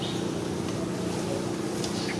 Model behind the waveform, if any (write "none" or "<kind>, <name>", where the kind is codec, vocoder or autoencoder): none